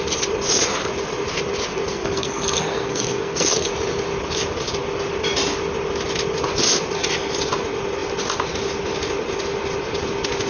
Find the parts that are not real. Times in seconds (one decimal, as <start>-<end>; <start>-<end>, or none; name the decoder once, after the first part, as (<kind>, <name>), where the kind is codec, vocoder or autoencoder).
1.9-3.7 (codec, SNAC)